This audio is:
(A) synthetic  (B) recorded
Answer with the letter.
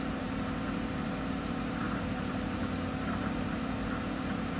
A